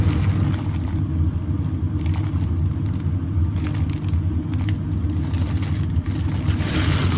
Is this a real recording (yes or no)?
yes